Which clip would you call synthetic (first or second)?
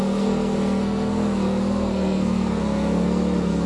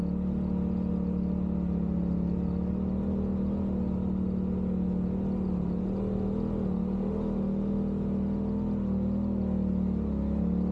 first